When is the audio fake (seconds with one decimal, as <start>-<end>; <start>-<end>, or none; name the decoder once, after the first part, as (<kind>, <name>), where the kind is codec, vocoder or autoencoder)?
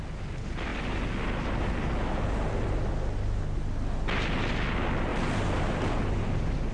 0.7-1.9 (vocoder, BigVGAN v2); 5.1-6.0